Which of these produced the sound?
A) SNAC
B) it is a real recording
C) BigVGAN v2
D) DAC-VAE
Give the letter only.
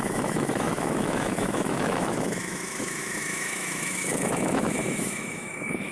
D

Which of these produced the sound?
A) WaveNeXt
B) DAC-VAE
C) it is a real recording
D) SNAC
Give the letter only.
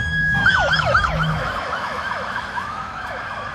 B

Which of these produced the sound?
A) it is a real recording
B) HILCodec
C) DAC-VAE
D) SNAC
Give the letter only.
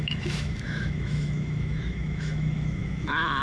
C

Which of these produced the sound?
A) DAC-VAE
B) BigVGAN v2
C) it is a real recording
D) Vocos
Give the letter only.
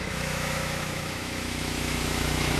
A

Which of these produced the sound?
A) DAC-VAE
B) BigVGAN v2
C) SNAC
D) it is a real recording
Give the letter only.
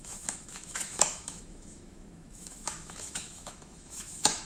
A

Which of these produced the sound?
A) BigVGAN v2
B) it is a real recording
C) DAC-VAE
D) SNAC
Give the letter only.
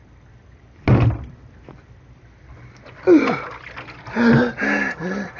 B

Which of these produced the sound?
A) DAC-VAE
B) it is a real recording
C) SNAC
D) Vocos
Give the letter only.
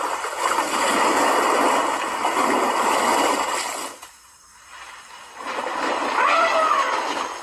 B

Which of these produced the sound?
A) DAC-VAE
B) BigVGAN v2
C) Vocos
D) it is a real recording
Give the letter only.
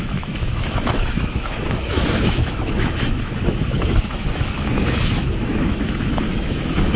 A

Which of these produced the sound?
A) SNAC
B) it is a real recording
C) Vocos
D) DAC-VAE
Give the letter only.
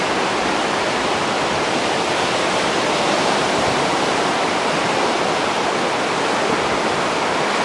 B